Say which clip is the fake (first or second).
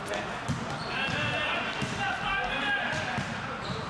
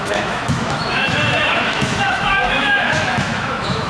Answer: second